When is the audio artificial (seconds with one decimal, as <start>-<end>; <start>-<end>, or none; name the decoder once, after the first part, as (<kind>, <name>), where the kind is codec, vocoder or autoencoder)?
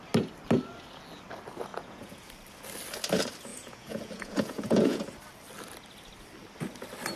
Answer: 1.7-2.3 (vocoder, Vocos); 3.5-5.0